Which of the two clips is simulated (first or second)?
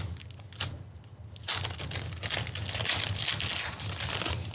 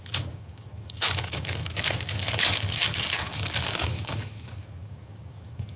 second